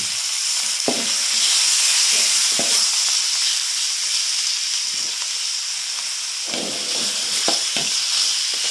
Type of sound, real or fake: real